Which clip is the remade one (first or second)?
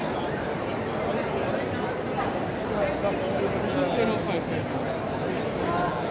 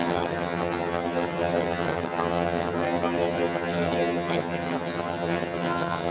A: second